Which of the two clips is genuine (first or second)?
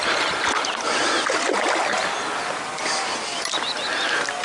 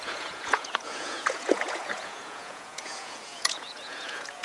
first